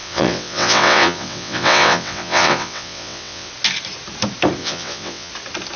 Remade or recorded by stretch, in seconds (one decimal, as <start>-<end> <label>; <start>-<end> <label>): 0.0-3.5 remade; 3.5-4.6 recorded; 4.6-5.3 remade; 5.3-5.8 recorded